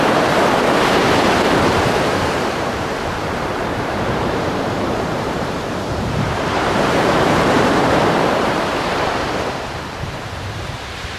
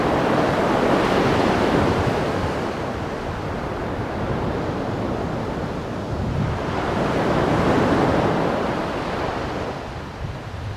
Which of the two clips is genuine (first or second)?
second